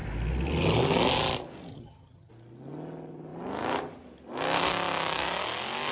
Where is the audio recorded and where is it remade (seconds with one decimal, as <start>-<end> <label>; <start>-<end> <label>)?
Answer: 0.0-1.7 recorded; 1.7-2.3 remade; 2.3-5.9 recorded